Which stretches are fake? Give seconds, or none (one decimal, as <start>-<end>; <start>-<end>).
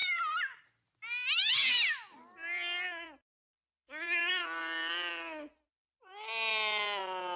none